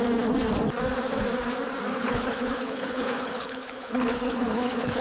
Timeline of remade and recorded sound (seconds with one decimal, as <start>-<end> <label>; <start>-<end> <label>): 0.0-1.9 recorded; 1.9-5.0 remade